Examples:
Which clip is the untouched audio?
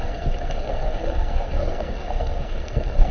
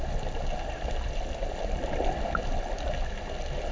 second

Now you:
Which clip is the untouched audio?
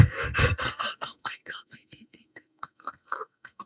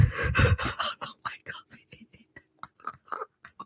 second